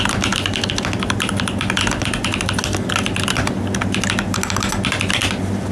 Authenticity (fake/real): real